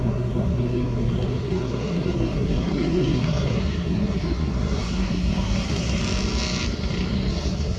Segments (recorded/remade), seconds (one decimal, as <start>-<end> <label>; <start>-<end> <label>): 0.0-6.0 remade; 6.0-7.3 recorded; 7.3-7.8 remade